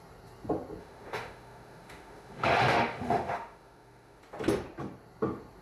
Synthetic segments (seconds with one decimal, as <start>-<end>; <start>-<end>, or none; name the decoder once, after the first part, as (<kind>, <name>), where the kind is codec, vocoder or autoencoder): 0.8-4.2 (autoencoder, DAC-VAE)